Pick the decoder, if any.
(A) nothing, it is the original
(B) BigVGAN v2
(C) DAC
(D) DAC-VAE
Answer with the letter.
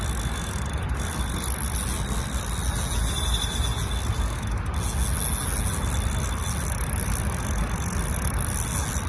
A